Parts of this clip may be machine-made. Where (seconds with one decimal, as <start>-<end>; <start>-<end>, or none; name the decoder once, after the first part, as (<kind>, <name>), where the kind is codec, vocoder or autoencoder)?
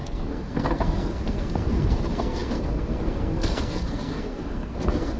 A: 0.0-5.2 (codec, SNAC)